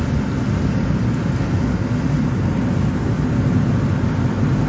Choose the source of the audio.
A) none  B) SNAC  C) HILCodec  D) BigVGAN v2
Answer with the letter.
A